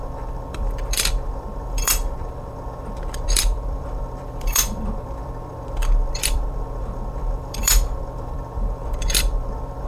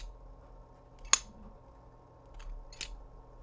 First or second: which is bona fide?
second